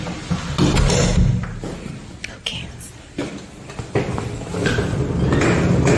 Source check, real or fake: real